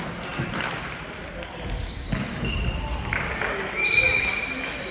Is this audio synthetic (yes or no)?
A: no